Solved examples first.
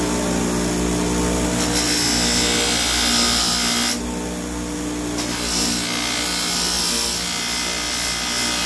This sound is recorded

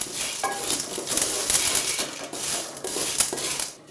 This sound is recorded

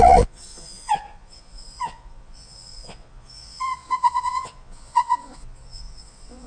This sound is remade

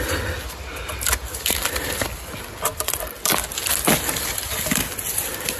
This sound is recorded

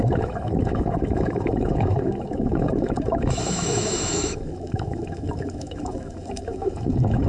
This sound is remade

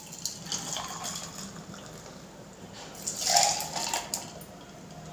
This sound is recorded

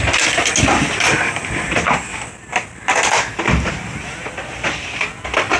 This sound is recorded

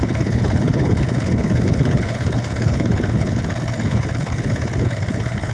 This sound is remade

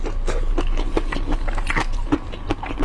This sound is recorded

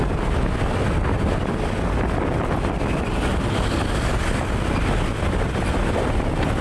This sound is recorded